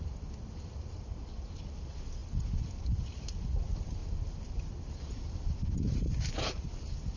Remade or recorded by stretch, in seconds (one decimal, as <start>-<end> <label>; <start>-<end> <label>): 0.0-7.2 recorded